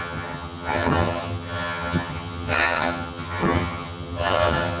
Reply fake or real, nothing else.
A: fake